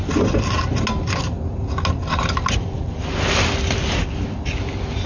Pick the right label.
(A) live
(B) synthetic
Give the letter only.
A